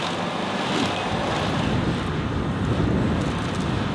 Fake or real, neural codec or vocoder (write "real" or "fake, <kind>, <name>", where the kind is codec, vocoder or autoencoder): real